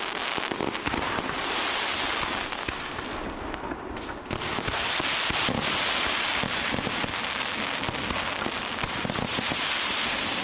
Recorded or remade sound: recorded